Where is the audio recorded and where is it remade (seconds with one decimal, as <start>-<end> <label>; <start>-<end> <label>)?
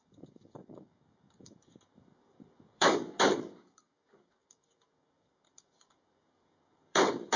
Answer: 0.0-7.4 remade